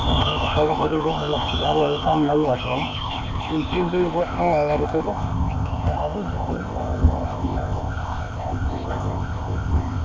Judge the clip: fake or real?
fake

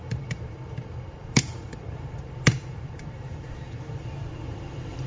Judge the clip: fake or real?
fake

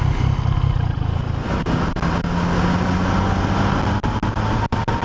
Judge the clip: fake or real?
real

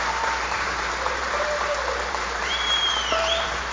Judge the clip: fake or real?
fake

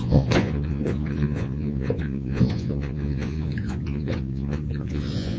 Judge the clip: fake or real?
fake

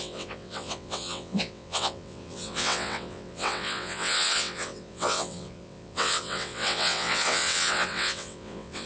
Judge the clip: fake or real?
fake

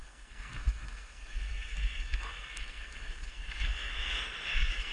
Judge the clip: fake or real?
fake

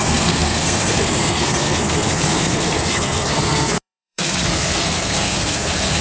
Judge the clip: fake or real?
fake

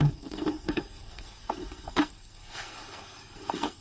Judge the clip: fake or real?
fake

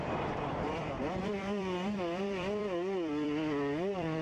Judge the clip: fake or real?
fake